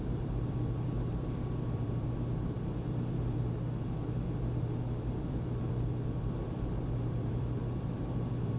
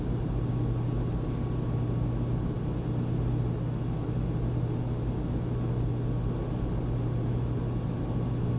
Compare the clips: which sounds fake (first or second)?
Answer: first